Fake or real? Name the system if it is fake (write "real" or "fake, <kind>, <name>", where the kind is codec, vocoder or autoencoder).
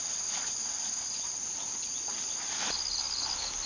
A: real